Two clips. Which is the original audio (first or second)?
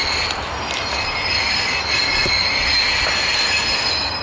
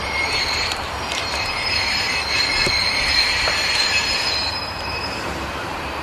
first